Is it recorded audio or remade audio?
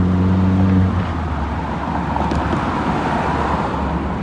recorded